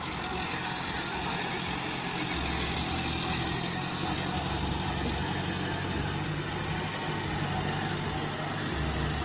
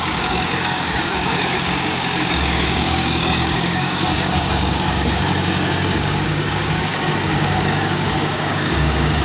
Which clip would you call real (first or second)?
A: first